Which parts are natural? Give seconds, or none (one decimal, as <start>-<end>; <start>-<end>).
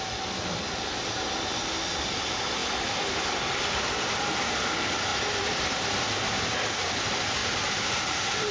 0.0-5.1; 5.7-7.4